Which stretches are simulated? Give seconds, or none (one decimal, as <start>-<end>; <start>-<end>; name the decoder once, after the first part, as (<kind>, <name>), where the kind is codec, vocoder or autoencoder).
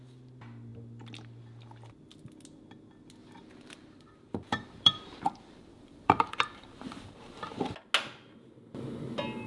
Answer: 3.2-7.6 (vocoder, BigVGAN v2)